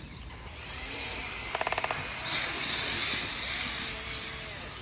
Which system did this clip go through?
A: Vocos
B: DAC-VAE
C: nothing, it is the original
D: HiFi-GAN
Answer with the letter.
C